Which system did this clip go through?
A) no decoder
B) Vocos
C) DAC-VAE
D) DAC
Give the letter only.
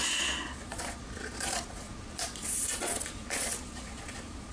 B